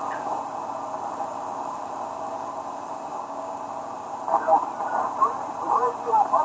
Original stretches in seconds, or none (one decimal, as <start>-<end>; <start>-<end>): 0.0-3.1; 3.6-6.4